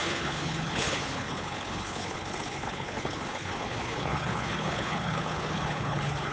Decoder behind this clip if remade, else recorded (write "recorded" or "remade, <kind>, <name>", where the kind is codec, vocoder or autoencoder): remade, codec, HILCodec